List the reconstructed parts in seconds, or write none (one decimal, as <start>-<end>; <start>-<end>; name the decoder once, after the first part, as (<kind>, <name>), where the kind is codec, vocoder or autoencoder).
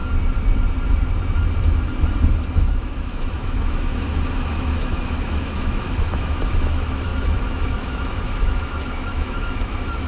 2.6-10.1 (autoencoder, DAC-VAE)